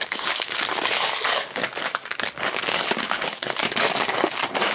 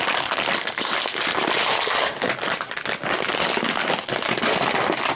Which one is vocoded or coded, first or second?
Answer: first